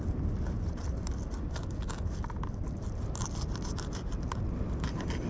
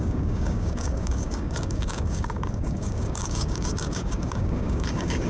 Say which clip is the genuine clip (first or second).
first